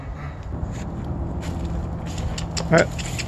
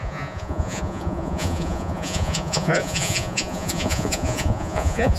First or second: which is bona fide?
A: first